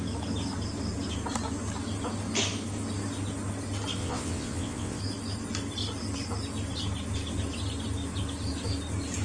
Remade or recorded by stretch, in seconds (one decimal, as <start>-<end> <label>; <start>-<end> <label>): 0.0-4.0 recorded; 4.0-5.0 remade; 5.0-9.2 recorded